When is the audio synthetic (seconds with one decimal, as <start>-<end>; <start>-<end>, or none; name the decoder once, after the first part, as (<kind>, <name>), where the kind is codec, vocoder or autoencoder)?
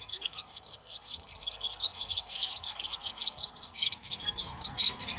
0.0-5.2 (codec, SNAC)